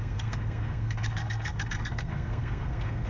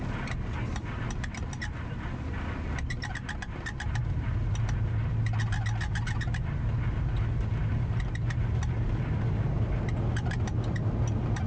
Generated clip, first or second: first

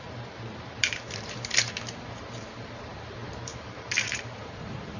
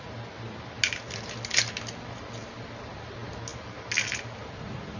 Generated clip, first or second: first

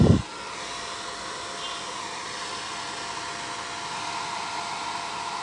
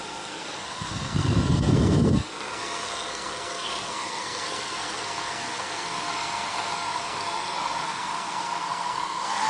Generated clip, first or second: second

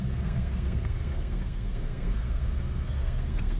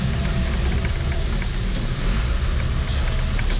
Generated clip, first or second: first